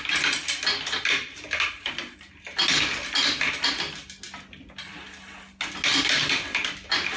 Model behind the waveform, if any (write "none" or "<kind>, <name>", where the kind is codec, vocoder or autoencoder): none